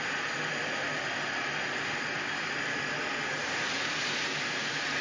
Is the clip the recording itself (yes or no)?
yes